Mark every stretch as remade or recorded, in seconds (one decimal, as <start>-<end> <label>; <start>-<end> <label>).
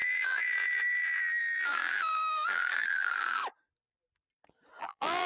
0.0-3.4 remade; 3.4-4.8 recorded; 4.8-5.3 remade